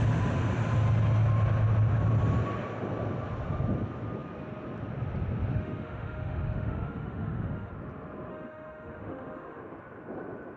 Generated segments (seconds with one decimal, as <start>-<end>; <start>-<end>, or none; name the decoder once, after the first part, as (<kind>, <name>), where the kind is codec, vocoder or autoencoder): 5.5-7.7 (autoencoder, DAC-VAE); 8.3-9.6